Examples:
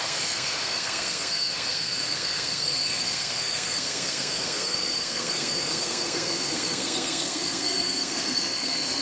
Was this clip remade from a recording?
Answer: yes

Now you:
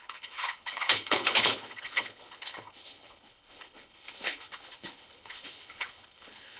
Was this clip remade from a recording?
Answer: yes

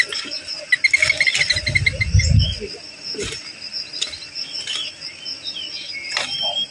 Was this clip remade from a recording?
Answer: no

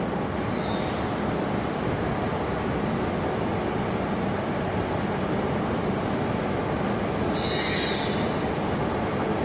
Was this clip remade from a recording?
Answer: no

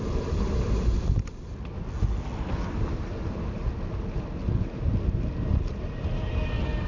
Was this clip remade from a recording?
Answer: no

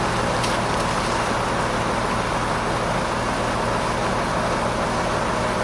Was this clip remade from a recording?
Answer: no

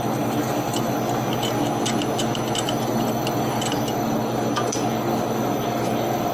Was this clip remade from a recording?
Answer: no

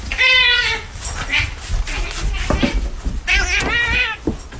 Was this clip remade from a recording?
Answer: no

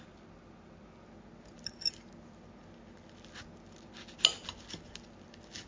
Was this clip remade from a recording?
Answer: no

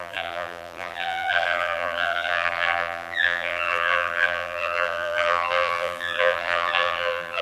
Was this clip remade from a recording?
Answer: yes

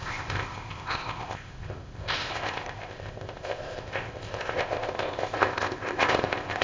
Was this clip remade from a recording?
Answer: yes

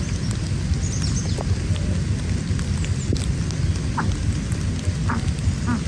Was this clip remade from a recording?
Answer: no